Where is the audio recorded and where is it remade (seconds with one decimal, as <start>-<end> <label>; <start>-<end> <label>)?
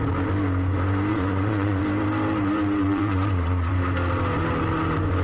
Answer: 0.0-1.1 recorded; 1.1-1.8 remade; 1.8-2.8 recorded; 2.8-3.7 remade; 3.7-5.2 recorded